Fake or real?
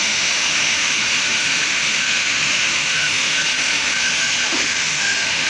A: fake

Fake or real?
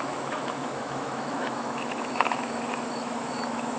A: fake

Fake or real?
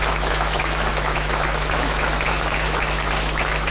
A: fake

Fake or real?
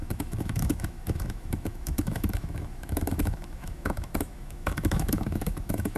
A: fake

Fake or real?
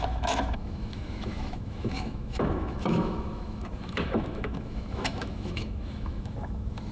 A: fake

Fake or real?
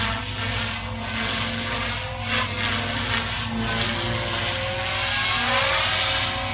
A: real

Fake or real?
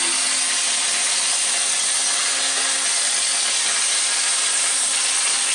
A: real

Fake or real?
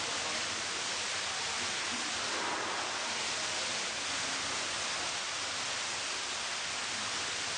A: real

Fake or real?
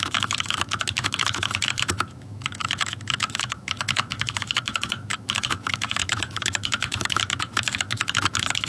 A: fake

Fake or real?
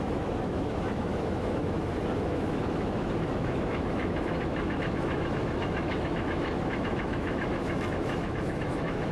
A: fake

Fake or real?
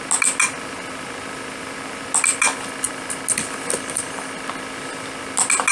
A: real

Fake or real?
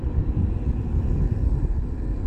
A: real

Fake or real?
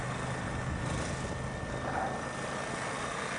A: real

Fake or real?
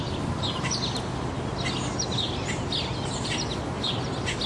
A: real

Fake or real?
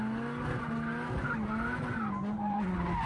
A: real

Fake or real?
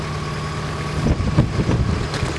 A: real